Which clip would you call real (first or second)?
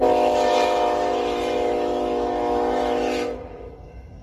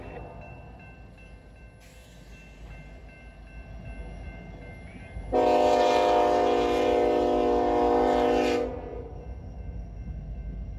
second